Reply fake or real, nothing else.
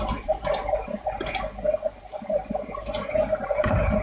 fake